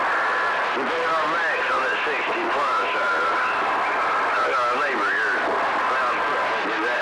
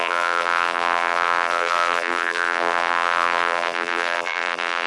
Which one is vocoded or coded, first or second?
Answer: second